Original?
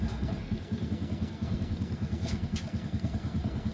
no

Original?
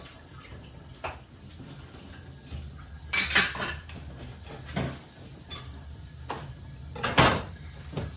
yes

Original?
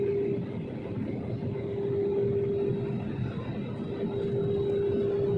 yes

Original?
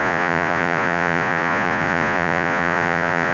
no